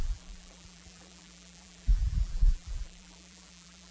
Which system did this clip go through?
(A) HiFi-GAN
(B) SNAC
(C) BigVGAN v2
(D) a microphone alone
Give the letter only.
C